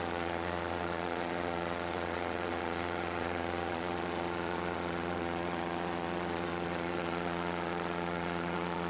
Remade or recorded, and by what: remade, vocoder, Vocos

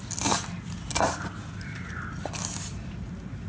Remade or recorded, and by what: recorded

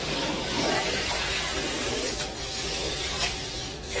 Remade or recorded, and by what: remade, codec, DAC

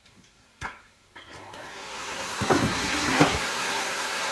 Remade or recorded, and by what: remade, codec, SNAC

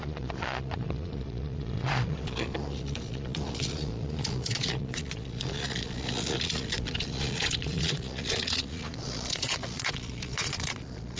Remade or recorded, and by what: remade, vocoder, Vocos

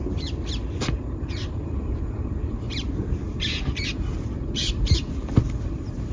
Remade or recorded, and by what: remade, vocoder, BigVGAN v2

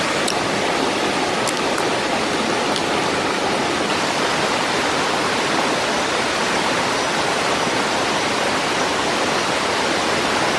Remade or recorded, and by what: recorded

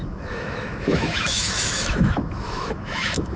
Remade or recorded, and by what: remade, autoencoder, DAC-VAE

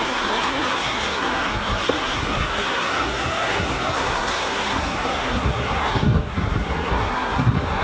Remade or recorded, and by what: remade, codec, SNAC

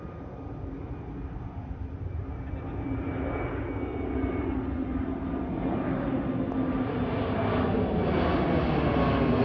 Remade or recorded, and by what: recorded